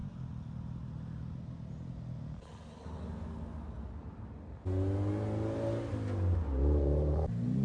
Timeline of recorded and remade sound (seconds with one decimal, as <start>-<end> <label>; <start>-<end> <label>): 0.0-7.6 recorded